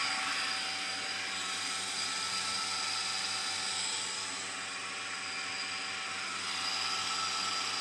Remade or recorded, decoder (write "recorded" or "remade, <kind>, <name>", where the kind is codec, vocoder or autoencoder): recorded